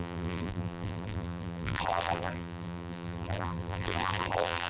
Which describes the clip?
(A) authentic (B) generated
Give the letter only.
B